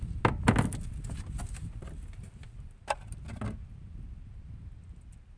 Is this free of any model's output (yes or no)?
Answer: yes